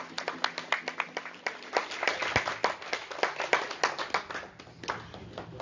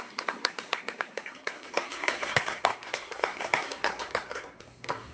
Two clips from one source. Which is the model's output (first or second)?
second